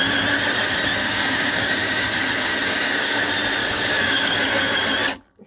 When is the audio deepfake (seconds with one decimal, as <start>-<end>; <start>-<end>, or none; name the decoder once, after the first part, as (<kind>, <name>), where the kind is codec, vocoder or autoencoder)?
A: 1.0-2.1 (codec, DAC); 2.5-3.2; 3.6-4.8